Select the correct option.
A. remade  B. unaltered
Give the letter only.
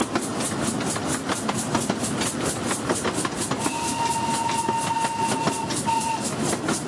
B